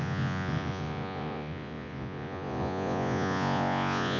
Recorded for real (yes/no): no